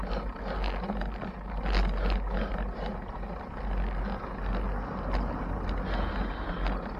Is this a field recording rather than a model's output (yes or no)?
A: yes